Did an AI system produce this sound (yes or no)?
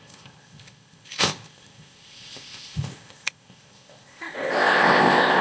yes